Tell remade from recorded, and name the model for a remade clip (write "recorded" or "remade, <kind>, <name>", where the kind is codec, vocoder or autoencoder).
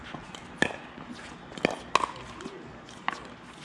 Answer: recorded